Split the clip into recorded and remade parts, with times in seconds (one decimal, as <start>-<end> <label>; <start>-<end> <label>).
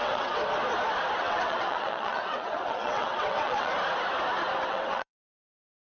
0.0-0.4 remade; 0.4-1.2 recorded; 1.2-3.7 remade; 3.7-4.7 recorded; 4.7-5.8 remade